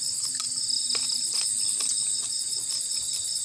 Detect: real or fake real